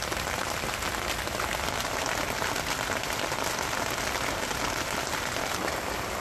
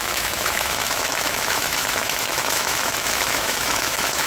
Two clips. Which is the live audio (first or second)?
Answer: first